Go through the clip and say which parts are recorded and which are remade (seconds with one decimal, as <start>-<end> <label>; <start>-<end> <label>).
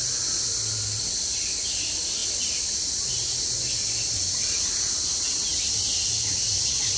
0.0-7.0 recorded